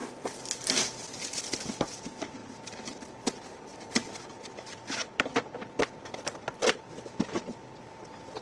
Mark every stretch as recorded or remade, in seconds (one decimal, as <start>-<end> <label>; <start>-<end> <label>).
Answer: 0.0-2.4 recorded; 2.4-3.1 remade; 3.1-3.7 recorded; 3.7-7.8 remade; 7.8-8.4 recorded